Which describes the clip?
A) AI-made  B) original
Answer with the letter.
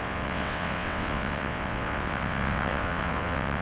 A